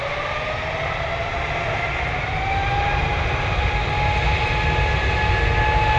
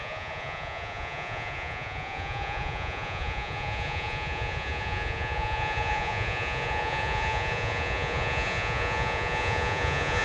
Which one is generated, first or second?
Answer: second